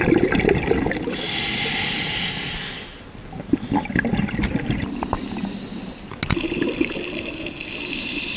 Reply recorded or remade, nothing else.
recorded